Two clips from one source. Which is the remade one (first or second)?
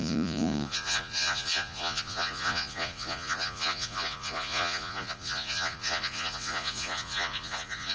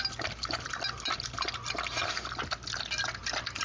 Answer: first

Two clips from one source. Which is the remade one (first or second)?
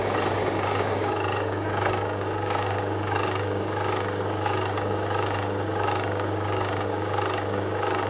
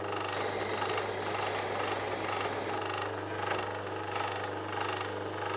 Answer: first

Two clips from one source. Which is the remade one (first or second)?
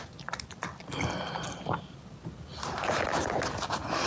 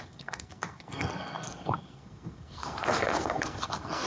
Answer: second